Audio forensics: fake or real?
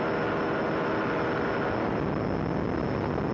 real